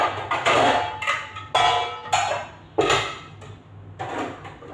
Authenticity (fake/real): real